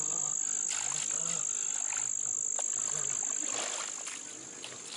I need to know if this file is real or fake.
real